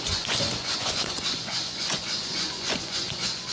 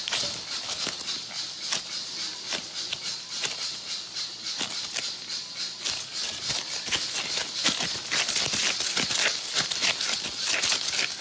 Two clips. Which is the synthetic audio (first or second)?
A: first